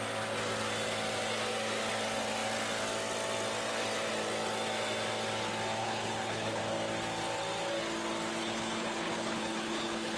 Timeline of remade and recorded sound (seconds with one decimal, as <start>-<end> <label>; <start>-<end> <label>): 0.0-5.8 recorded; 5.8-6.6 remade; 6.6-8.4 recorded; 8.4-10.2 remade